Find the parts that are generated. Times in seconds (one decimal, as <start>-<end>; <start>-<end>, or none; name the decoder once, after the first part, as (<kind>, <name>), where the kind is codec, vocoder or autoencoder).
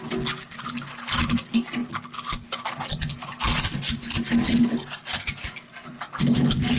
none